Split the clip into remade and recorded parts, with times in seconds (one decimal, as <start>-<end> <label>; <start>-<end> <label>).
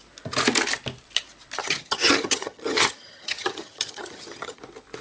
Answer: 0.0-1.6 recorded; 1.6-4.6 remade; 4.6-5.0 recorded